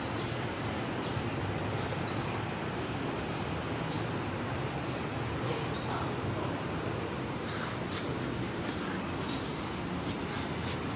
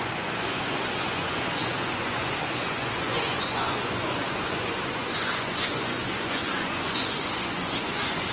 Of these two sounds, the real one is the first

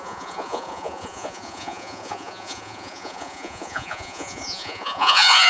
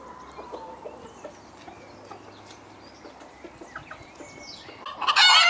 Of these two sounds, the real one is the second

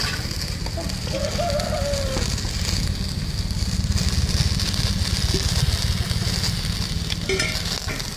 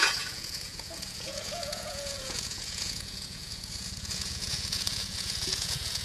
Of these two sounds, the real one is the first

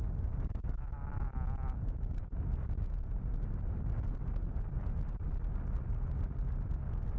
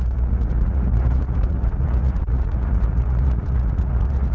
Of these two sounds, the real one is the first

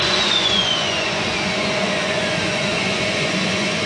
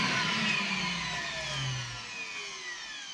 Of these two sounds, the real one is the second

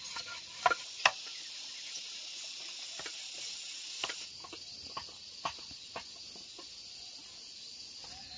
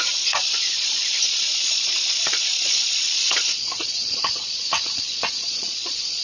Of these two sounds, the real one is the first